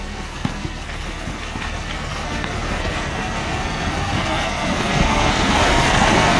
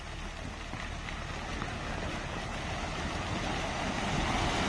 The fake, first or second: first